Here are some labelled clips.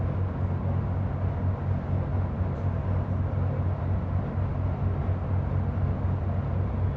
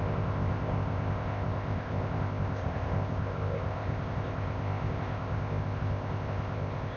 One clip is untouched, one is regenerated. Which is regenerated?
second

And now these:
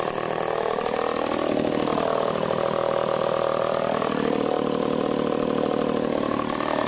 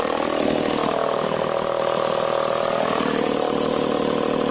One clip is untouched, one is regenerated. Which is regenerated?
first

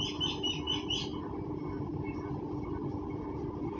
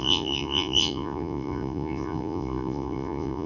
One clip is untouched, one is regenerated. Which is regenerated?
second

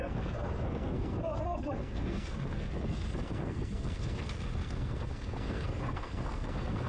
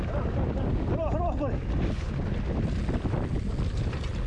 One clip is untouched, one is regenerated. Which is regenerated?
first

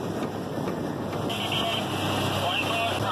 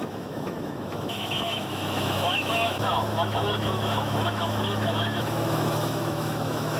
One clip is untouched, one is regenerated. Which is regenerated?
second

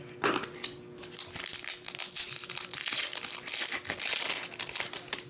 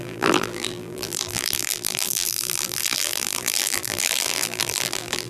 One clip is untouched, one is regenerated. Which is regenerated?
second